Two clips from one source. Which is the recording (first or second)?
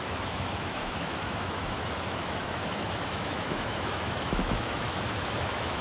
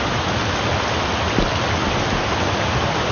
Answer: second